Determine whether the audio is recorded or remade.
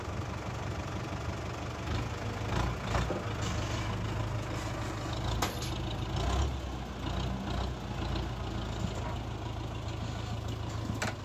recorded